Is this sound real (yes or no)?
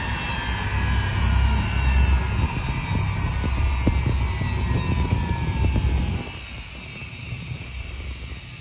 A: yes